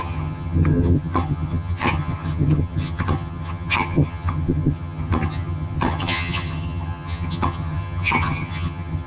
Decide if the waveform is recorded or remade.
remade